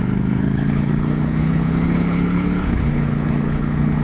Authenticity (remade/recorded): remade